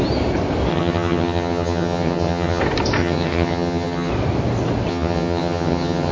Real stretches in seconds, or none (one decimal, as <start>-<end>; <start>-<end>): 0.0-0.7; 2.6-3.0; 4.1-4.9